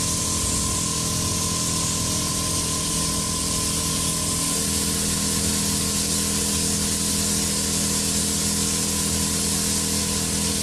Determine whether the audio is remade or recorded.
recorded